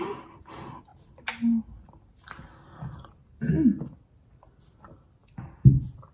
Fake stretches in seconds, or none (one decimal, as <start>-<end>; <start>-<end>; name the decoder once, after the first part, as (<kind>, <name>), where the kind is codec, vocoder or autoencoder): 5.2-6.1 (vocoder, BigVGAN v2)